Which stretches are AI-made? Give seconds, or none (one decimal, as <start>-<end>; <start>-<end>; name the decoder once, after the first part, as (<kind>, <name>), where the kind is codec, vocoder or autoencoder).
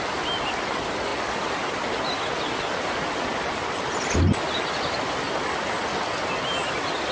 none